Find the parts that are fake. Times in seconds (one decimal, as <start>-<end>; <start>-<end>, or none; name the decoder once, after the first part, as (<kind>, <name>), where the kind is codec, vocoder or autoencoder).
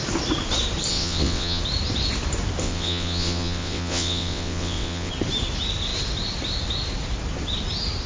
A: 0.9-1.6 (vocoder, WaveNeXt); 2.6-5.1